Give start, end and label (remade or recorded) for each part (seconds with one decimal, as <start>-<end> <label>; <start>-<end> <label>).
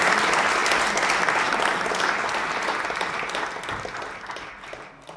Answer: 0.0-5.2 recorded